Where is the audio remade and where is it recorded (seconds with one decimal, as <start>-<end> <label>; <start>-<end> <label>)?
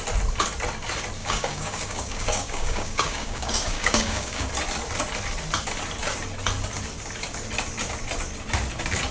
0.0-1.2 recorded; 1.2-4.5 remade; 4.5-9.1 recorded